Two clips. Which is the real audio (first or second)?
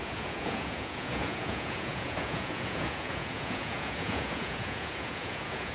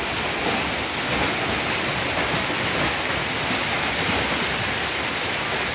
second